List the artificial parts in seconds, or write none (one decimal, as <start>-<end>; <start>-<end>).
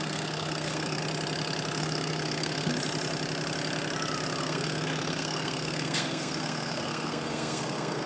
0.0-1.0; 1.8-2.7; 4.4-8.1